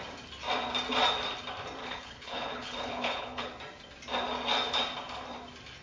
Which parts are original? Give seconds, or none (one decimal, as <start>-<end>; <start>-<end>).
0.0-1.8; 3.5-5.8